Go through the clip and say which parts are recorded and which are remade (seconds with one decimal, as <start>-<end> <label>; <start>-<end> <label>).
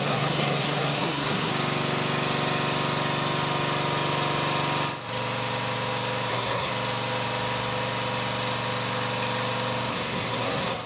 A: 0.0-1.5 remade; 1.5-6.3 recorded; 6.3-6.7 remade; 6.7-9.9 recorded; 9.9-10.9 remade